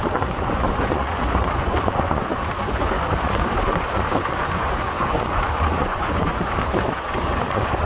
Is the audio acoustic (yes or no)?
no